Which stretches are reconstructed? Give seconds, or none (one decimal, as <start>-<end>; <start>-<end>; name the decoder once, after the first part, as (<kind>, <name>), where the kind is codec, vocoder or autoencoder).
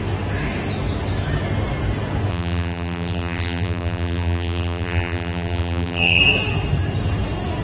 2.3-6.2 (vocoder, BigVGAN v2)